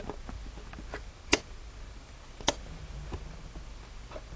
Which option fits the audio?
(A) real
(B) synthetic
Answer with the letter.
A